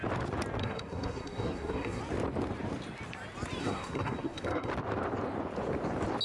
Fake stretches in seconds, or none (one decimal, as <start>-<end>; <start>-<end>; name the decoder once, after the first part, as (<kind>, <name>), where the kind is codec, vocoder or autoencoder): 0.6-2.0 (codec, SNAC); 3.6-4.7